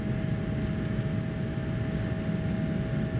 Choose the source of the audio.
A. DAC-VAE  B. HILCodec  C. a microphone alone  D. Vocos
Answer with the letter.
C